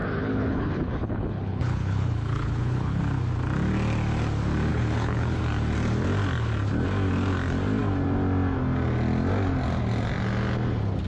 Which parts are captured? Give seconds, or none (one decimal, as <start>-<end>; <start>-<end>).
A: 3.0-4.7; 5.4-11.1